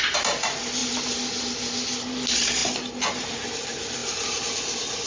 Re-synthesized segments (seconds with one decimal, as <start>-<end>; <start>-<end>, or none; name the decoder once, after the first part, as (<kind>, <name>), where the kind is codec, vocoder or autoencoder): none